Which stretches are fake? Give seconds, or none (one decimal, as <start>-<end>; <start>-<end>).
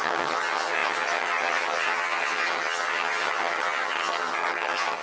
0.0-5.0